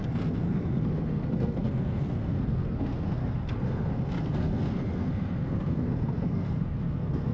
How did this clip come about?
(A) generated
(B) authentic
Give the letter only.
A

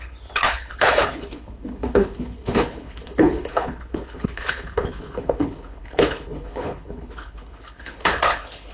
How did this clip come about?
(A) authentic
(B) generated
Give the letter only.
B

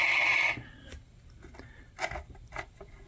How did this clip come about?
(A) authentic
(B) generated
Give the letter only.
A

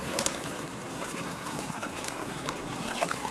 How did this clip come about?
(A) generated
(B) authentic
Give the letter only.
A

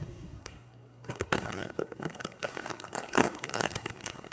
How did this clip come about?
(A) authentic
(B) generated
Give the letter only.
B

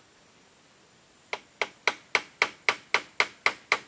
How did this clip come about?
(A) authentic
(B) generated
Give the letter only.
A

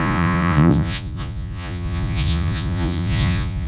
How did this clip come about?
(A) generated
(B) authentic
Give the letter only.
A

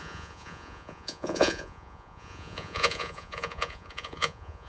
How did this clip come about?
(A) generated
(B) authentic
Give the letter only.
A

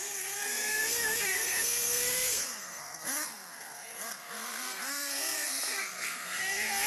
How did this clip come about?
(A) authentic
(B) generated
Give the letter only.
B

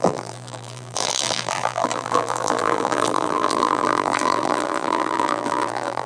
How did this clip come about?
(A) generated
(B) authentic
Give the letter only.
A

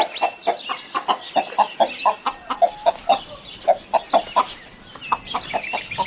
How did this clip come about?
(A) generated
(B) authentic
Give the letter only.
B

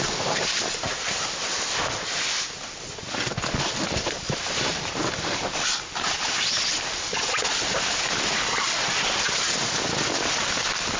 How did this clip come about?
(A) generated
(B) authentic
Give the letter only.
A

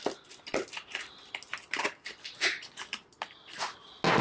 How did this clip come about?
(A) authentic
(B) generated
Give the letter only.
A